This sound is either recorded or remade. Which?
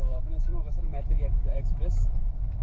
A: remade